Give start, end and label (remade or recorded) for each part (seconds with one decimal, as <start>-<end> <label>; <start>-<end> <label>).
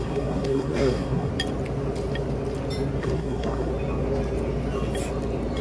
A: 0.0-1.3 remade; 1.3-3.0 recorded; 3.0-3.7 remade; 3.7-5.6 recorded